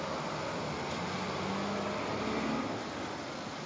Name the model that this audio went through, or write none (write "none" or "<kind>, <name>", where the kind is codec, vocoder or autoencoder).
none